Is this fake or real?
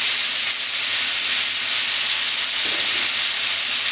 real